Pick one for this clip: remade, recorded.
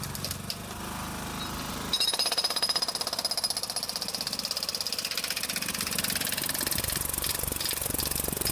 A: recorded